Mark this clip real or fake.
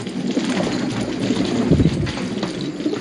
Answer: real